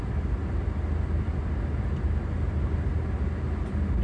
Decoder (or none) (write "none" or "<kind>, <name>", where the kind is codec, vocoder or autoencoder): none